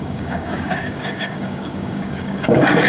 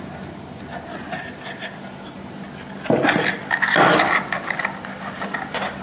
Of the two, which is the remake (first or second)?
first